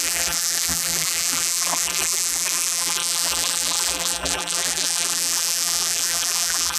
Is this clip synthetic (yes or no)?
yes